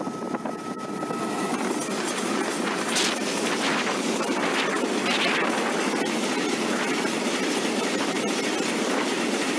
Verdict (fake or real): real